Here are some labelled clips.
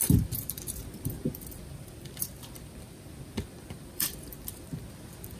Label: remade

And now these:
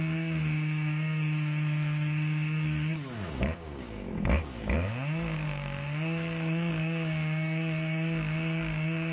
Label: remade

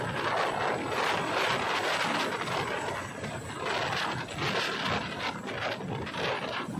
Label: recorded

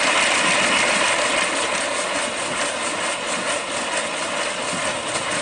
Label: recorded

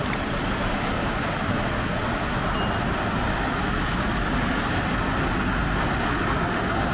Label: recorded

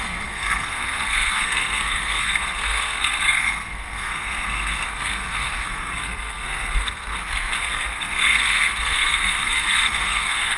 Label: remade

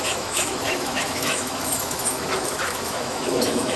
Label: remade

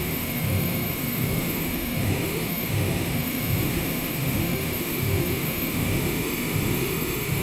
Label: remade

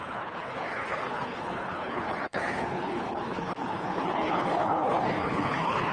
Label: remade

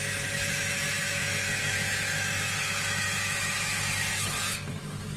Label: remade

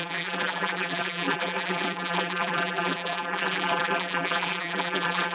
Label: remade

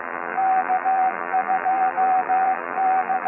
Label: remade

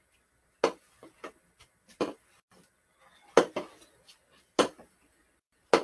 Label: recorded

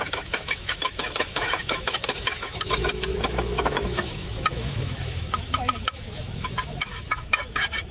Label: remade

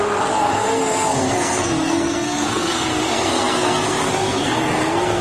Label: remade